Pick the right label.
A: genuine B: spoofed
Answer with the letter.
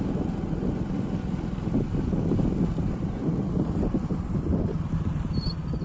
A